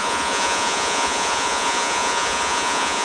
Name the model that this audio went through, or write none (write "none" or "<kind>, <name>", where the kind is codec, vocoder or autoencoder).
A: vocoder, Vocos